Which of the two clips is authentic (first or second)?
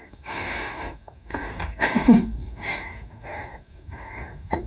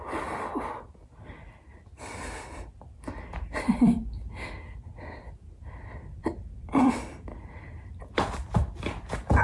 second